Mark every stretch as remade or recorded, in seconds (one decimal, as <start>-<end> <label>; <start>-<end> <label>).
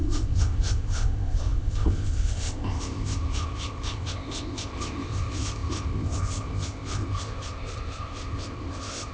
0.0-9.1 remade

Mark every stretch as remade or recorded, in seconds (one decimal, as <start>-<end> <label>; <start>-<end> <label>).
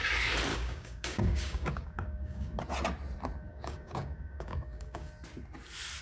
0.0-0.5 recorded; 0.5-2.6 remade; 2.6-3.5 recorded; 3.5-5.1 remade; 5.1-6.0 recorded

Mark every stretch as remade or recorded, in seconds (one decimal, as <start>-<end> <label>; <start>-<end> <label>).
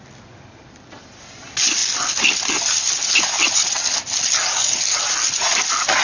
0.0-6.0 recorded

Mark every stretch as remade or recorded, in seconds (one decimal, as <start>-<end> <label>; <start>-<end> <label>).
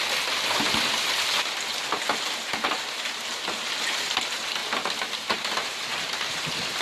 0.0-6.8 recorded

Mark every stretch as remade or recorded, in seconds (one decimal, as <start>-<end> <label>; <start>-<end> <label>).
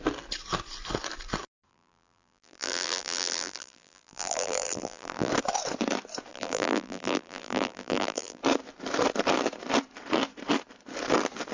0.0-1.7 recorded; 1.7-5.3 remade; 5.3-6.3 recorded; 6.3-8.4 remade; 8.4-11.5 recorded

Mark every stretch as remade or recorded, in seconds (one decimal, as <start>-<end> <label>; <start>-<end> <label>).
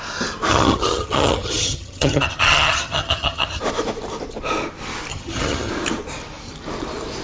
0.0-0.5 recorded; 0.5-3.6 remade; 3.6-5.1 recorded; 5.1-5.7 remade; 5.7-7.2 recorded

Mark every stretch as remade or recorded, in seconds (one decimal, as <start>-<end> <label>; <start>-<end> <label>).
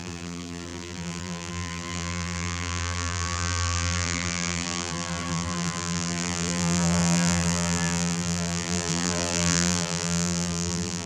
0.0-11.1 remade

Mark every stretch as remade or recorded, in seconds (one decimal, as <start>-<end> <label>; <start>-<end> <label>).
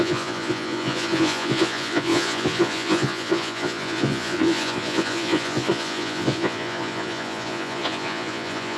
0.0-8.8 remade